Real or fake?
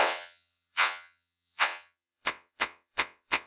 fake